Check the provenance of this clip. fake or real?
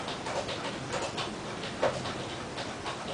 real